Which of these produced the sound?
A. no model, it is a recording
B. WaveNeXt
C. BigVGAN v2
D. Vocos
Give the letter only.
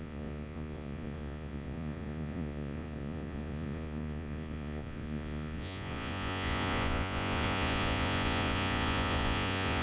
D